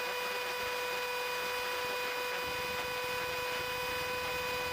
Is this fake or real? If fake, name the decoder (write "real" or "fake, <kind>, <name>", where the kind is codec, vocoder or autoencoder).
real